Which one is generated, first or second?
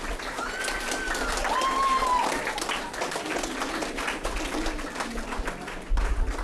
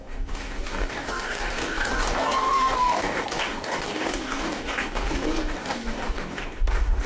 second